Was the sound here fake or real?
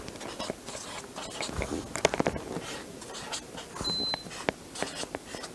real